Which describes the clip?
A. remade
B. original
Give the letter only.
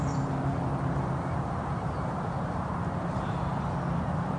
A